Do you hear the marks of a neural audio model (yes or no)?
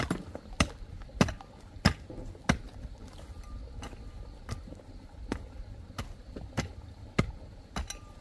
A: no